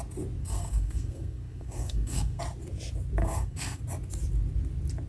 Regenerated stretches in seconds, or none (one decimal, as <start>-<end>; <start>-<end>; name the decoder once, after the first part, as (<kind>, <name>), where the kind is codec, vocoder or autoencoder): 0.4-2.4 (codec, SNAC); 3.2-3.8